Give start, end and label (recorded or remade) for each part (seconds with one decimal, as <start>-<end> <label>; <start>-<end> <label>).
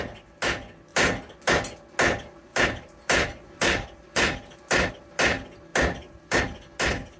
0.0-0.9 recorded; 0.9-1.5 remade; 1.5-2.5 recorded; 2.5-4.9 remade; 4.9-5.7 recorded; 5.7-6.4 remade; 6.4-7.2 recorded